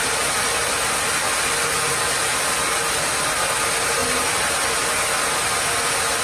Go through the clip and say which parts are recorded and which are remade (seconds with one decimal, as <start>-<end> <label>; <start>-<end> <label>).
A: 0.0-6.2 recorded